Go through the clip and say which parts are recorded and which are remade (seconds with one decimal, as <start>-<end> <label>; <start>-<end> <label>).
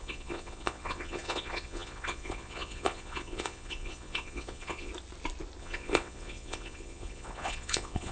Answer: 0.0-4.9 remade; 4.9-5.6 recorded; 5.6-8.1 remade